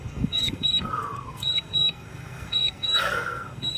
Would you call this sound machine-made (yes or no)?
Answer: yes